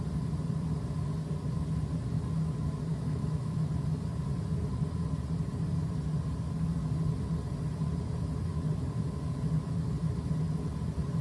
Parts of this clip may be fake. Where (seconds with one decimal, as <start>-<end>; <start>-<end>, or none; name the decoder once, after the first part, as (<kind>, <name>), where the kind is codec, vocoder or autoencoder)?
2.9-3.6 (autoencoder, DAC-VAE)